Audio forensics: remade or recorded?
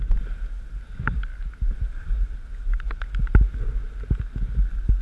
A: recorded